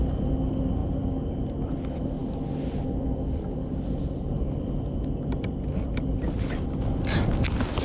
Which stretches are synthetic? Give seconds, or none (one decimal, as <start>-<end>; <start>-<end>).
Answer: none